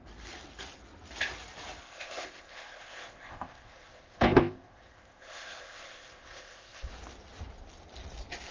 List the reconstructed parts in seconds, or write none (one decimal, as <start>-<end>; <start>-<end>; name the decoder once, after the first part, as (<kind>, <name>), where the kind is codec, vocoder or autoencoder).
1.8-6.9 (codec, ZipCodec)